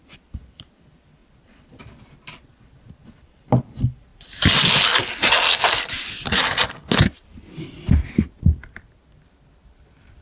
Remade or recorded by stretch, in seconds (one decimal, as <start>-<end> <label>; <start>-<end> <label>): 0.0-1.2 recorded; 1.2-3.6 remade; 3.6-10.2 recorded